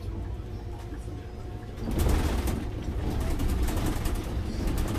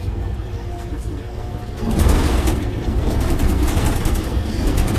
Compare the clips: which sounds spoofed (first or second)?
second